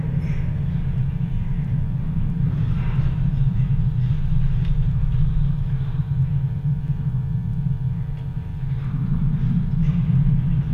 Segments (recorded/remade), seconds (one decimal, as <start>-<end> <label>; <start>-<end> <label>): 0.0-5.0 recorded; 5.0-6.1 remade; 6.1-10.7 recorded